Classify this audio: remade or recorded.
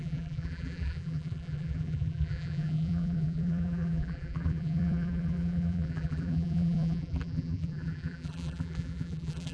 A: remade